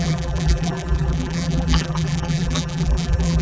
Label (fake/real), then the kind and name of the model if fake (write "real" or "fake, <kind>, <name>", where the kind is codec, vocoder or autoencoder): fake, vocoder, BigVGAN v2